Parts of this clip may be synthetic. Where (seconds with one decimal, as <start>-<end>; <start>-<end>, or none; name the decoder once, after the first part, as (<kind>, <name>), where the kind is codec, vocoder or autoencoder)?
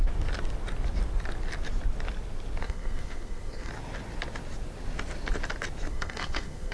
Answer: 2.6-3.7 (codec, SNAC); 5.9-6.7